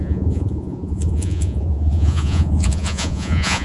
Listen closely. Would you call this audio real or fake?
fake